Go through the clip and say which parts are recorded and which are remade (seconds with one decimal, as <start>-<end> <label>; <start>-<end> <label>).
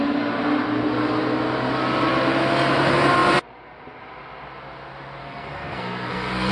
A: 0.0-5.2 recorded; 5.2-6.5 remade